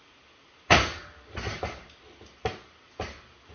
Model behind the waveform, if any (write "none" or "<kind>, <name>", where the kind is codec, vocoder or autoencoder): none